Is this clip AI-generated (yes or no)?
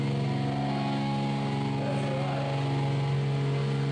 no